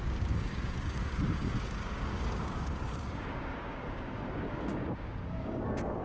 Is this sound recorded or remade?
remade